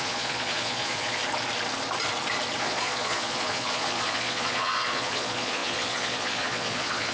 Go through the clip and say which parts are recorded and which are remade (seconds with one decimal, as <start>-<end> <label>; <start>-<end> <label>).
0.0-1.2 remade; 1.2-2.6 recorded; 2.6-7.1 remade